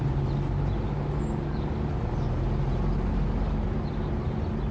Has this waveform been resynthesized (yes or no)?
no